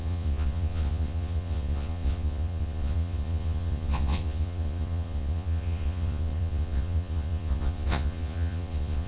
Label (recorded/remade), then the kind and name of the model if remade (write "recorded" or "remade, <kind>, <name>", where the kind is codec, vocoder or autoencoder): remade, vocoder, Vocos